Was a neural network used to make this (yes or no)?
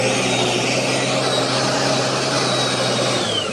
no